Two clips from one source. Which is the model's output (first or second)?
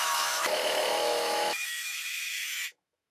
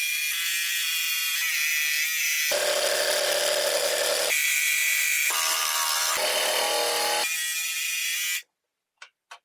first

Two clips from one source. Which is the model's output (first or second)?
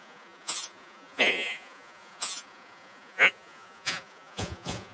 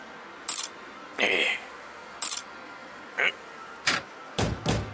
first